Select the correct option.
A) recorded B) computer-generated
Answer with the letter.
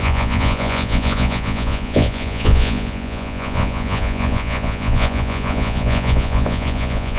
B